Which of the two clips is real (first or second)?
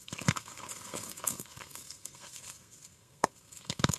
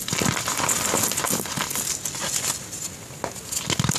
second